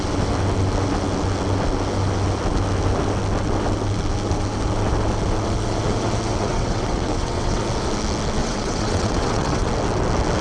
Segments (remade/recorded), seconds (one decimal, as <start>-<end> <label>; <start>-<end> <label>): 0.0-6.3 recorded; 6.3-7.6 remade; 7.6-8.4 recorded; 8.4-9.7 remade; 9.7-10.4 recorded